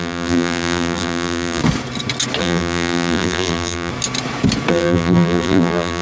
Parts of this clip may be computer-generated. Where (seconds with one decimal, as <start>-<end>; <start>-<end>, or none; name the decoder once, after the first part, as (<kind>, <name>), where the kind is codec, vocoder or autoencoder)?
0.0-1.6 (vocoder, BigVGAN v2); 2.4-3.9; 4.7-6.0

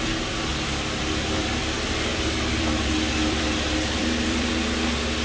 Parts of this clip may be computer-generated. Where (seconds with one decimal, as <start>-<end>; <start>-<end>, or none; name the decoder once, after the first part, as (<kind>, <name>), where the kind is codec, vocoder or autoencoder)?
0.5-1.6 (vocoder, BigVGAN v2); 2.1-4.5